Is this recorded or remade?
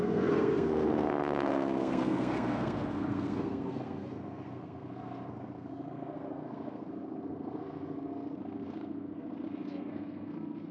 remade